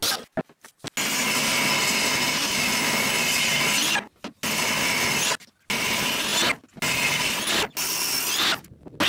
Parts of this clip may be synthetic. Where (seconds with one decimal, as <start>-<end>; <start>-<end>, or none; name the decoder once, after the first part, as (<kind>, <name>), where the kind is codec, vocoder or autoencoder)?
none